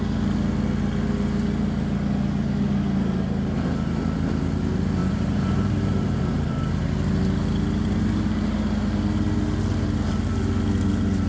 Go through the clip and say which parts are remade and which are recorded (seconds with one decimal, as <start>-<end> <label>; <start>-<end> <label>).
0.0-5.0 recorded; 5.0-6.6 remade; 6.6-11.3 recorded